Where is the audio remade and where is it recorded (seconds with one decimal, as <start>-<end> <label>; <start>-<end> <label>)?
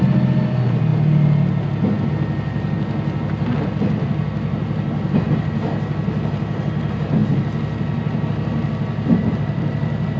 0.0-10.2 recorded